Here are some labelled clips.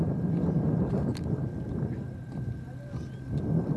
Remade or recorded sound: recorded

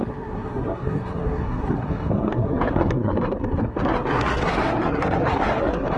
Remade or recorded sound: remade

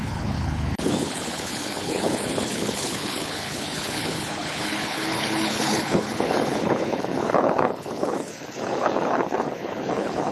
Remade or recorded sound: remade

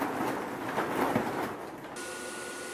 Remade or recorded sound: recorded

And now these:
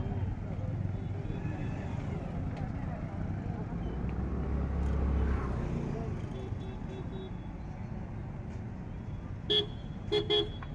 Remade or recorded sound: recorded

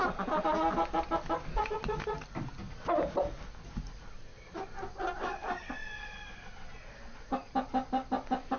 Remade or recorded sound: recorded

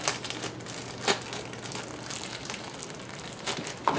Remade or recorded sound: recorded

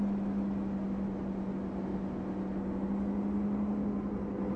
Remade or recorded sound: recorded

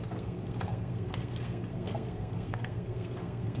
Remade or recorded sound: remade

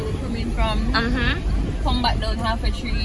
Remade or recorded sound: recorded